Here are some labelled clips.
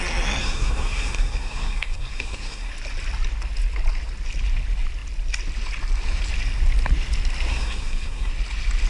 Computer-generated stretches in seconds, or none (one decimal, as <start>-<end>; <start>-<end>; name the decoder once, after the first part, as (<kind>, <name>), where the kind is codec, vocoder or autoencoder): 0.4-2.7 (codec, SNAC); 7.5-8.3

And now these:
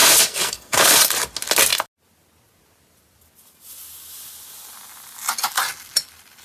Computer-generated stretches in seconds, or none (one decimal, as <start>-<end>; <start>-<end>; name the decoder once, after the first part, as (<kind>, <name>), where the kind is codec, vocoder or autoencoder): 0.0-1.0 (codec, SNAC)

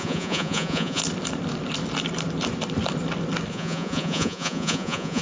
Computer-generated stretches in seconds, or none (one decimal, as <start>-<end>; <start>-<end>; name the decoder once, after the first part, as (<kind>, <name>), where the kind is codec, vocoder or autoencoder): 0.0-1.0 (vocoder, Vocos); 3.5-5.2

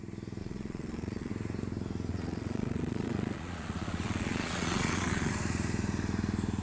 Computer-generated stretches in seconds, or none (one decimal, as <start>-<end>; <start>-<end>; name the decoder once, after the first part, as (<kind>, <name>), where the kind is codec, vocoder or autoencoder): 0.4-1.3 (vocoder, Vocos); 2.1-5.3

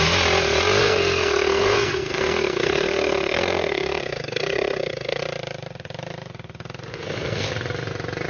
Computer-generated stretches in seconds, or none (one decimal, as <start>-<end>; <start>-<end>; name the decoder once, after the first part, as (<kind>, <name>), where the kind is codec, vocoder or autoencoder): 0.8-5.2 (codec, SNAC); 6.9-7.5